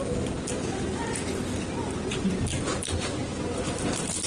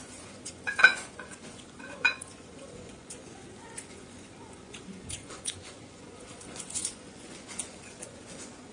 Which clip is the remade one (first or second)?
second